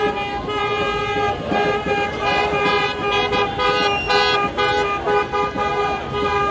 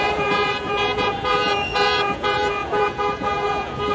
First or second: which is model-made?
second